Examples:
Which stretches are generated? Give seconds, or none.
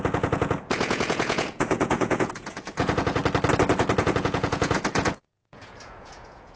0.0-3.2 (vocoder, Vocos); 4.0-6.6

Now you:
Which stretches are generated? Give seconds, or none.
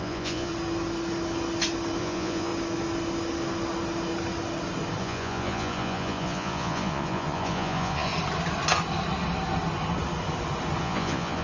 0.0-0.5 (vocoder, Vocos); 2.0-2.5; 5.0-8.1; 10.8-11.4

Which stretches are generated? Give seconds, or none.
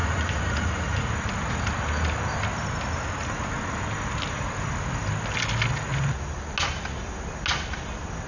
0.0-1.1 (vocoder, Vocos)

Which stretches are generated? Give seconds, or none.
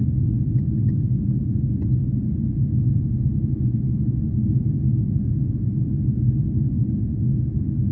none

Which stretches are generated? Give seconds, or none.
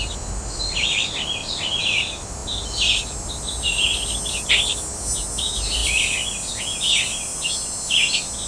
none